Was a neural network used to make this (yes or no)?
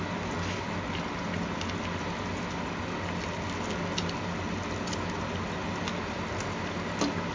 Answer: no